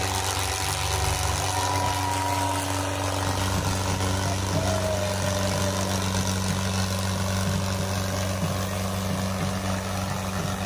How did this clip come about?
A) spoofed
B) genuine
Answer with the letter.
B